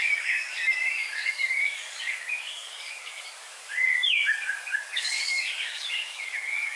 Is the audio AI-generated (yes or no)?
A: yes